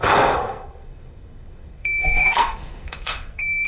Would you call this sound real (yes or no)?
no